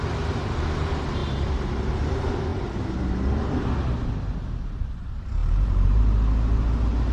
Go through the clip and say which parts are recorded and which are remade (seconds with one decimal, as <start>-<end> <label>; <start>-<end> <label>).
0.0-1.2 recorded; 1.2-1.9 remade; 1.9-5.4 recorded; 5.4-6.0 remade; 6.0-7.1 recorded